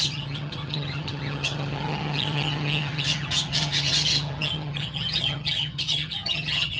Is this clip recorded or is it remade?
remade